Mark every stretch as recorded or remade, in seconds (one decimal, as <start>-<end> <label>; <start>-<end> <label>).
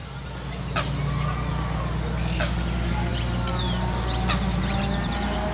0.0-5.5 recorded